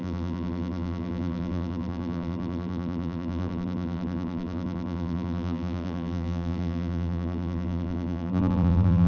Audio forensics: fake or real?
fake